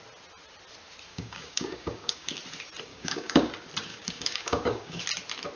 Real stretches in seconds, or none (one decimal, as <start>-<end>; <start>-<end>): 0.0-1.1; 2.4-2.9; 3.5-3.9; 5.0-5.6